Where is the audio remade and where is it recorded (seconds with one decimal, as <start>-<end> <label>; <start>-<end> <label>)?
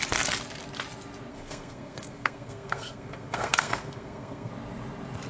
0.0-1.3 recorded; 1.3-4.5 remade; 4.5-5.3 recorded